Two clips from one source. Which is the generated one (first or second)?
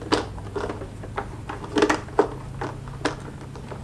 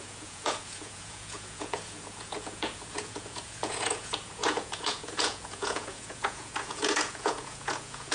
second